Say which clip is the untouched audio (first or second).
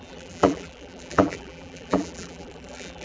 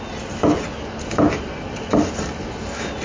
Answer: second